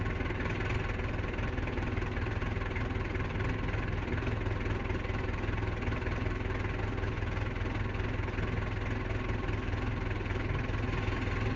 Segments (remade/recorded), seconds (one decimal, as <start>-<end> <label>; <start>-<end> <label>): 0.0-11.6 recorded